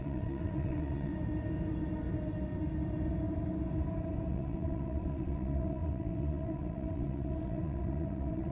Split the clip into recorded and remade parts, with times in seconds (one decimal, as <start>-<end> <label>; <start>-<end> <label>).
0.0-1.1 remade; 1.1-4.3 recorded; 4.3-8.5 remade